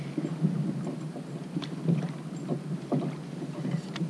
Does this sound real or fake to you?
real